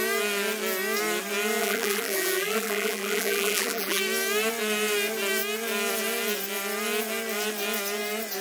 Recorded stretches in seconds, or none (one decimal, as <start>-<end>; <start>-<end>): 0.0-1.6; 4.0-8.4